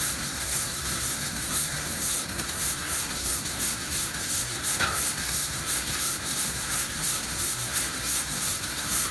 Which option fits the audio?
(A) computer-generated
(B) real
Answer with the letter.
A